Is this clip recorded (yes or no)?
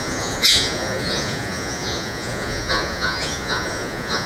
no